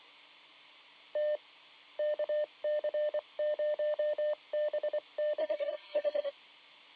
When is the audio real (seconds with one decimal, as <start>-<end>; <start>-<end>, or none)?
0.0-5.4; 6.3-7.0